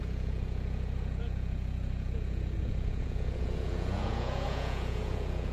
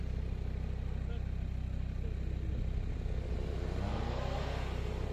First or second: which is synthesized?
first